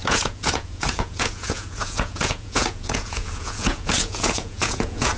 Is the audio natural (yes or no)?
no